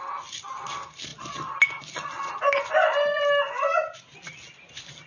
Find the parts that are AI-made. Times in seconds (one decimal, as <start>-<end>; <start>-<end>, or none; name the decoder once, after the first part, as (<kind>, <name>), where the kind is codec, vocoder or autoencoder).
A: none